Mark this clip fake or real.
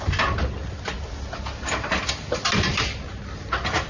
real